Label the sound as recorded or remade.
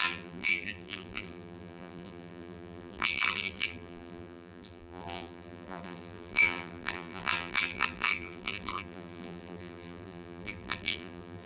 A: remade